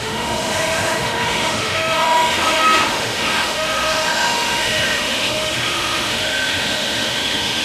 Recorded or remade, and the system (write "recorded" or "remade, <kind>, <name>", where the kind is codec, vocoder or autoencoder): remade, autoencoder, DAC-VAE